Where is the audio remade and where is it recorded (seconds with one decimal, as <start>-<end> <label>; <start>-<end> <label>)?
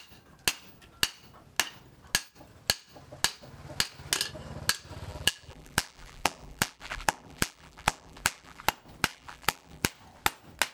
0.0-5.1 recorded; 5.1-8.6 remade; 8.6-9.1 recorded; 9.1-9.9 remade; 9.9-10.7 recorded